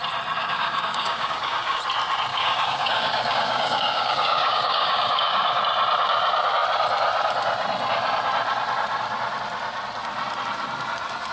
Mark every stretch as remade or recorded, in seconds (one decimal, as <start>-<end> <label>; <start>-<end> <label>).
0.0-0.4 recorded; 0.4-1.8 remade; 1.8-2.3 recorded; 2.3-5.6 remade; 5.6-11.3 recorded